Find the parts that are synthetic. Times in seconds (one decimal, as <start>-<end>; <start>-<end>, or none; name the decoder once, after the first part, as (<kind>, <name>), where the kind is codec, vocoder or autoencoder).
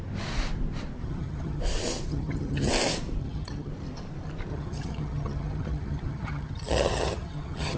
1.0-1.6 (vocoder, HiFi-GAN); 2.1-2.7; 3.2-3.7; 4.5-7.8